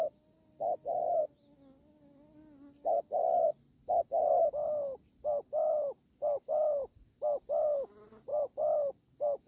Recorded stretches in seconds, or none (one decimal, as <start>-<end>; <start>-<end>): 0.0-9.5